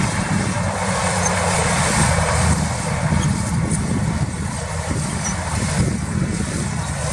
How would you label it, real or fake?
fake